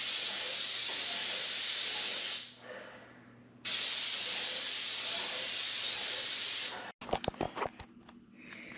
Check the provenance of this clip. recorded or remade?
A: recorded